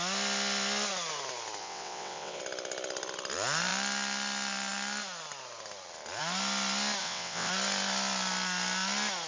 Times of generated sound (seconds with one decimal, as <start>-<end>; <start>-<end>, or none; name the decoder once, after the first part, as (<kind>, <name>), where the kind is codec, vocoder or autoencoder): 1.6-2.4 (vocoder, WaveNeXt); 7.0-7.5